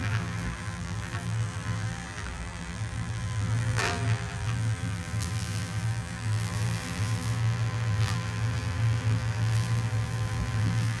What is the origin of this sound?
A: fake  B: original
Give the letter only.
A